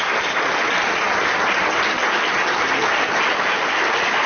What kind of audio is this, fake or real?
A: real